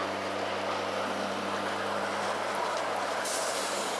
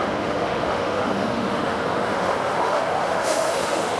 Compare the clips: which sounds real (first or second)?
first